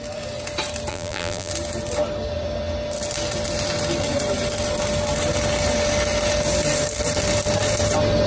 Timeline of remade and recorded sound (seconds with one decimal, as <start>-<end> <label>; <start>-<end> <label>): 0.0-0.9 recorded; 0.9-1.5 remade; 1.5-8.3 recorded